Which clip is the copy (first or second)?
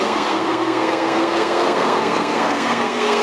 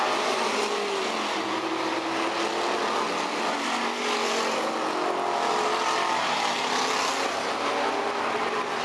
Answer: first